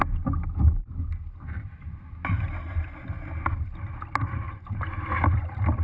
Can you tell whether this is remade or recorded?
recorded